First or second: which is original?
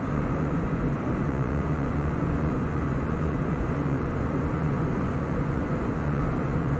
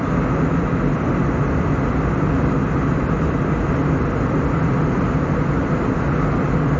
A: second